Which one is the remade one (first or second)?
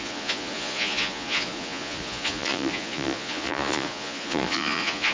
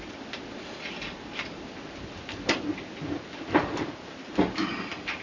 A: first